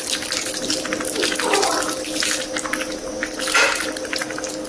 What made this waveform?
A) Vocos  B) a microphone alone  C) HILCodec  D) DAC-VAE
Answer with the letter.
B